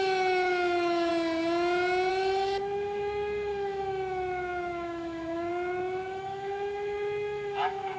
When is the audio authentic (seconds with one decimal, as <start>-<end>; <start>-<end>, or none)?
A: 1.1-2.1